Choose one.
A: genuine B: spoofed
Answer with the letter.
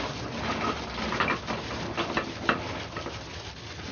A